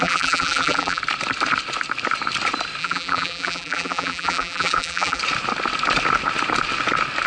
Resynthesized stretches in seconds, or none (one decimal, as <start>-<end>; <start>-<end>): 0.0-1.0; 2.8-5.2